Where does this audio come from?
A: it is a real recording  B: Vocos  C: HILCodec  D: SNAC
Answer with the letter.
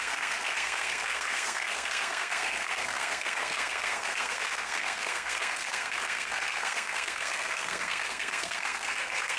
D